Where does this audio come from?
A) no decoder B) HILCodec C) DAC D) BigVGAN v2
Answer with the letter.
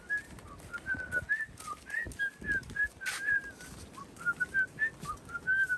A